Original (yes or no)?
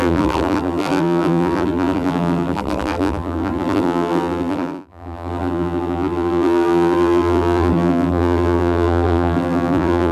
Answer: no